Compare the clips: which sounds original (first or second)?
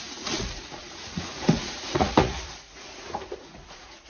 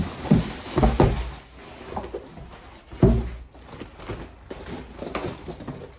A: second